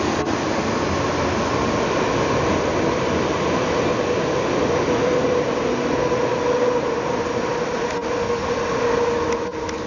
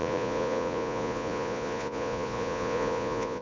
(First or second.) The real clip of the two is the first